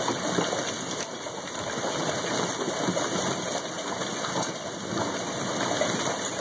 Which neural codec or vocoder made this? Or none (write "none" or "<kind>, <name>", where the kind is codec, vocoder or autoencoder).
none